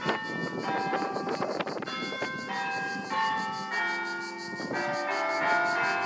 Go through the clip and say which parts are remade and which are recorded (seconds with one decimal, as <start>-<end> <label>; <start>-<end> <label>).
0.0-0.9 recorded; 0.9-3.4 remade; 3.4-6.1 recorded